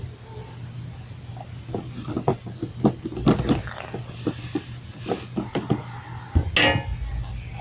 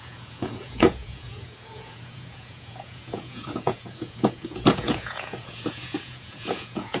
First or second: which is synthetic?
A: second